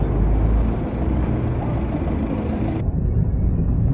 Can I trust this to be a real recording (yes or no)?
yes